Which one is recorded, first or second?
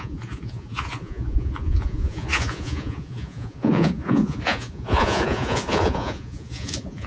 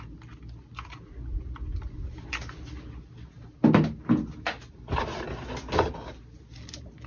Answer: second